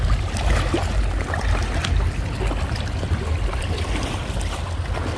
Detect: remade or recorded recorded